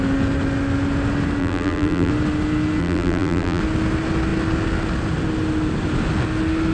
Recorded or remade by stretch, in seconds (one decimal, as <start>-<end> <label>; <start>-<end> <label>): 0.0-1.4 recorded; 1.4-2.1 remade; 2.1-2.8 recorded; 2.8-3.6 remade; 3.6-6.7 recorded